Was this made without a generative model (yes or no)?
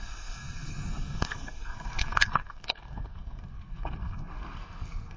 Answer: no